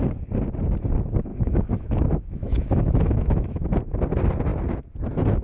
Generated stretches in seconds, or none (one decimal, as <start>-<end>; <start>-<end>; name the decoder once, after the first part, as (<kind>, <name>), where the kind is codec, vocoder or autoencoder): 1.3-3.8 (autoencoder, DAC-VAE)